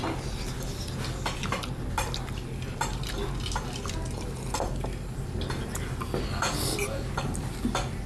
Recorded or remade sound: recorded